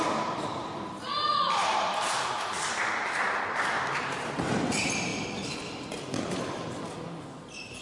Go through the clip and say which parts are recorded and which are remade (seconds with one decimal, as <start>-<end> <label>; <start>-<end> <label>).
0.0-5.1 remade; 5.1-7.8 recorded